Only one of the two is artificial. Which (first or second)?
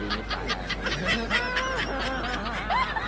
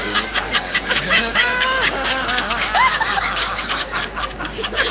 second